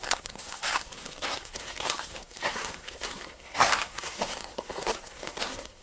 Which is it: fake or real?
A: fake